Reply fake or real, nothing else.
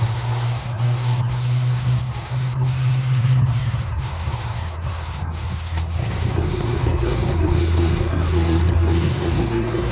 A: fake